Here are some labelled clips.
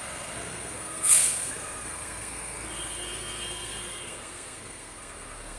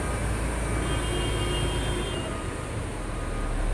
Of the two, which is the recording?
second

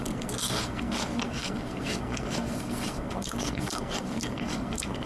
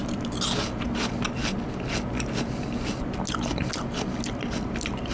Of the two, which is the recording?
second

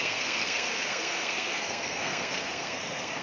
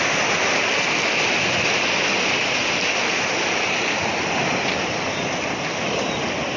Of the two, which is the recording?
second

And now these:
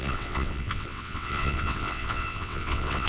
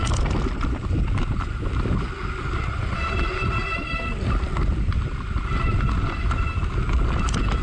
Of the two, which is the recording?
second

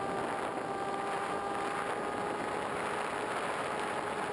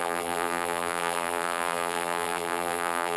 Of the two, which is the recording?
first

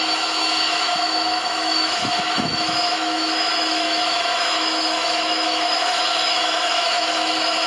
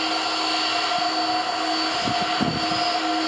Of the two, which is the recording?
second